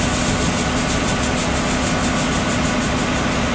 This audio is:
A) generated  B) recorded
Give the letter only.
B